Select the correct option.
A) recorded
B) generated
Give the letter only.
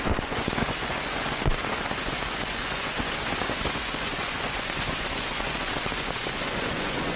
B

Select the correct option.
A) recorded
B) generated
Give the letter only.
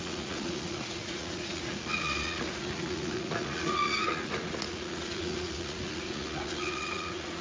B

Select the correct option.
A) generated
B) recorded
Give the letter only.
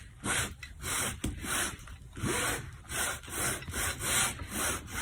B